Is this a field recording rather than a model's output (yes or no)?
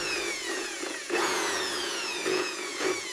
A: no